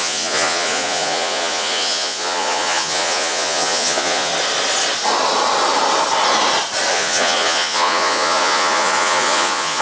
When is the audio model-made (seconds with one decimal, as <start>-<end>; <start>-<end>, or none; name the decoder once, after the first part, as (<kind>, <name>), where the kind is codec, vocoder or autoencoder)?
0.0-4.3 (vocoder, Vocos); 6.9-9.8